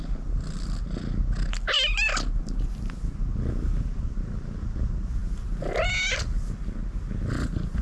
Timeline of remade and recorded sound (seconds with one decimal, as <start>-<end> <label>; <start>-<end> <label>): 0.0-7.8 recorded